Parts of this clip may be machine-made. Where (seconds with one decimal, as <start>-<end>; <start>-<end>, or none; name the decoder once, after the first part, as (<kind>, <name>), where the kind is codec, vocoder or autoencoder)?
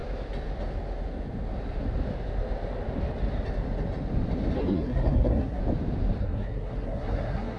4.6-5.6 (codec, SNAC); 6.2-7.6